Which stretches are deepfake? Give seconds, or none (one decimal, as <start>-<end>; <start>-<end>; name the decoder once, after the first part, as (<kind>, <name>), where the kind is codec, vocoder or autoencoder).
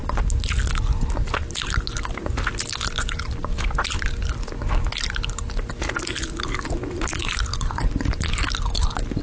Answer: none